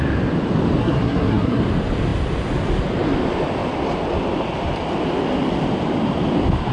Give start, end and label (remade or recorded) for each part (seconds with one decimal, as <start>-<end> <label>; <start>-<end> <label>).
0.0-0.8 recorded; 0.8-1.6 remade; 1.6-6.7 recorded